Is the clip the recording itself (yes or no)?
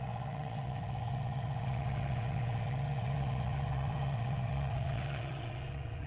no